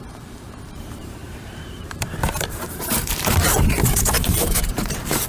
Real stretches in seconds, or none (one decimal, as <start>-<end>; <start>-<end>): none